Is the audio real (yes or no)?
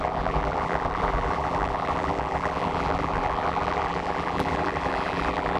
no